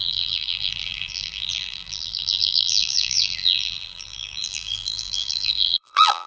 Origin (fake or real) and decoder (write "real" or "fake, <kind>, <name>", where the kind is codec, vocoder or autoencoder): fake, vocoder, BigVGAN v2